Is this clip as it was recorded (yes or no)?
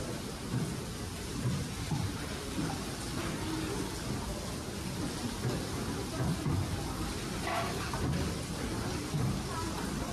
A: yes